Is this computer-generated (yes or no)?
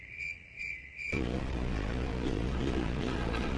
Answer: yes